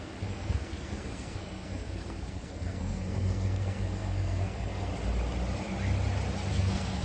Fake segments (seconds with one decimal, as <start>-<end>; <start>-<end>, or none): 0.0-4.9; 6.5-7.0